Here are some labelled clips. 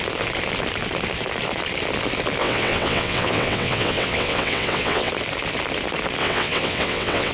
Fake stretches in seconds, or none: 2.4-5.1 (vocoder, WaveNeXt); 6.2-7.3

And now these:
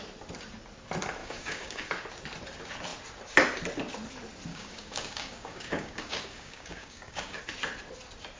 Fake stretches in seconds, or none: 1.2-1.9 (codec, DAC); 4.5-7.4

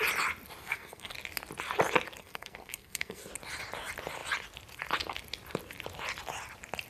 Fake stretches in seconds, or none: 0.6-1.1 (codec, SNAC); 2.2-3.3

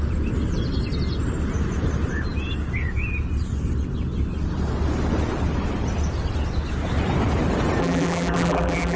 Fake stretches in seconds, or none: 7.8-9.0 (vocoder, BigVGAN v2)

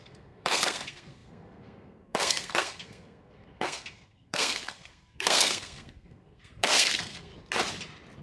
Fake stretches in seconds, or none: 0.0-7.3 (codec, SNAC)

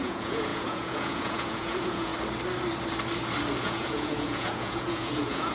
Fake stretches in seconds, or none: 0.0-2.1 (vocoder, Vocos); 3.6-5.5